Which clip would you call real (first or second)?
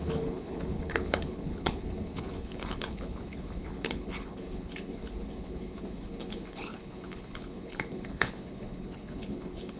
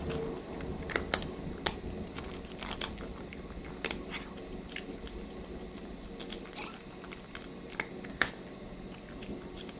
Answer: second